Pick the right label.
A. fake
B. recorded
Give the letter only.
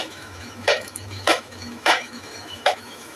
A